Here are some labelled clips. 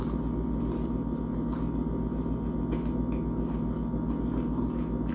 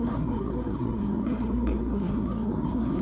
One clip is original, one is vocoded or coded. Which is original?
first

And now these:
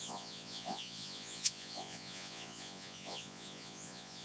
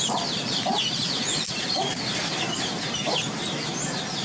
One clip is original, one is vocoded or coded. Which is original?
second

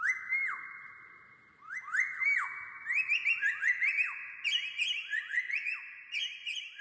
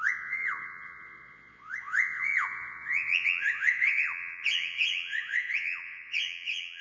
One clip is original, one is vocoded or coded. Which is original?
first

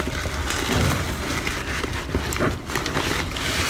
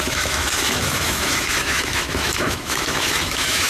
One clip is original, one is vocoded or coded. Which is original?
first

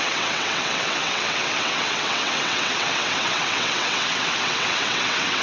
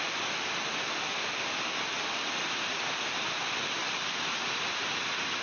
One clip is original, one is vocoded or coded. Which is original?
second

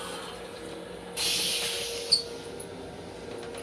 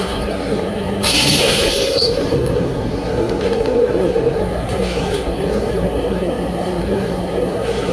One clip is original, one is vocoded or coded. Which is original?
first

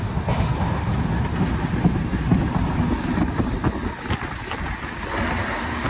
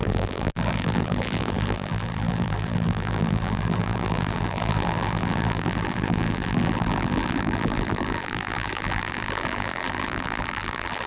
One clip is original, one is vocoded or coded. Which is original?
first